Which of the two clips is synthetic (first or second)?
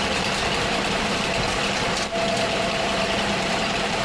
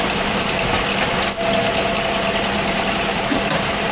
first